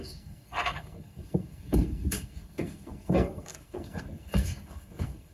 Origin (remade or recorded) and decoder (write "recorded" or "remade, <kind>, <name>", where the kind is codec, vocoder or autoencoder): remade, codec, SNAC